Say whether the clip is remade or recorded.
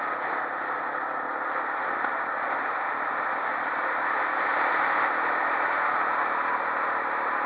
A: recorded